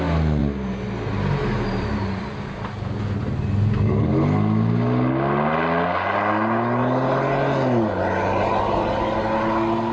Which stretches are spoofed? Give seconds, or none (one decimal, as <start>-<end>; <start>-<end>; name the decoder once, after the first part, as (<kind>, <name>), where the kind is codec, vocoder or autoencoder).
none